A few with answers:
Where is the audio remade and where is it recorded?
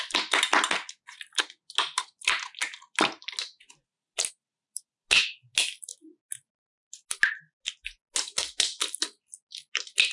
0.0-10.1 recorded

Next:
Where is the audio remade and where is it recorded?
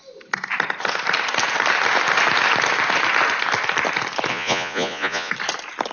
0.0-4.3 recorded; 4.3-5.3 remade; 5.3-5.9 recorded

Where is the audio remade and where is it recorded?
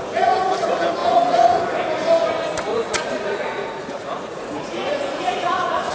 0.0-1.0 recorded; 1.0-1.6 remade; 1.6-2.7 recorded; 2.7-5.9 remade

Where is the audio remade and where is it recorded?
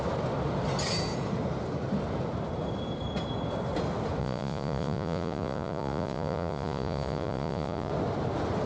0.0-4.2 recorded; 4.2-7.9 remade; 7.9-8.7 recorded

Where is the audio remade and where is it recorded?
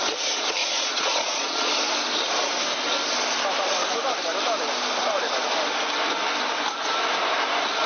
0.0-0.6 recorded; 0.6-1.7 remade; 1.7-7.9 recorded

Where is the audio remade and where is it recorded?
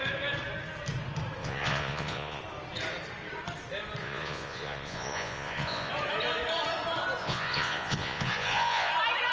0.0-1.4 recorded; 1.4-2.4 remade; 2.4-4.0 recorded; 4.0-5.9 remade; 5.9-7.2 recorded; 7.2-8.9 remade; 8.9-9.3 recorded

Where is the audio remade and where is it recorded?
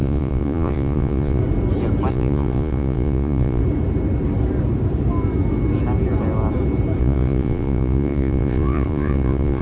0.0-1.4 remade; 1.4-2.1 recorded; 2.1-3.6 remade; 3.6-7.0 recorded; 7.0-9.6 remade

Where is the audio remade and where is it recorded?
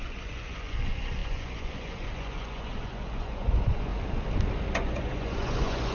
0.0-3.9 remade; 3.9-4.7 recorded; 4.7-5.9 remade